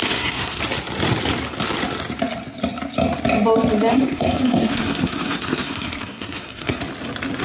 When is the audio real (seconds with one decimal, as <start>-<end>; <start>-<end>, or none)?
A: 0.6-3.9; 6.8-7.4